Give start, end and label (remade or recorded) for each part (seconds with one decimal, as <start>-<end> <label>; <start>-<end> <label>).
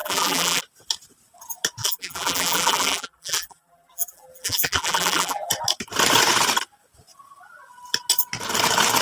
0.0-0.6 remade; 0.6-1.8 recorded; 1.8-5.5 remade; 5.5-9.0 recorded